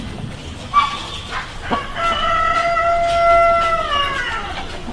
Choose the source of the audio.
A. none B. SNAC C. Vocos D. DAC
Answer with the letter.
A